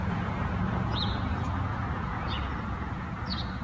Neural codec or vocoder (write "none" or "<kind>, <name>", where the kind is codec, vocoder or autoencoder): vocoder, Vocos